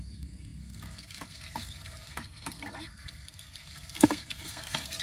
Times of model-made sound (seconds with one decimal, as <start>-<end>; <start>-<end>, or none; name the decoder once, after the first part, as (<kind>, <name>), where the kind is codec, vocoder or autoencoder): 0.0-5.0 (codec, SNAC)